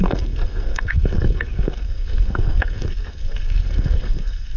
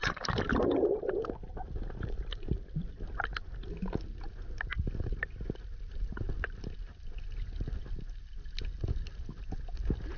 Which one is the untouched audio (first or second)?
second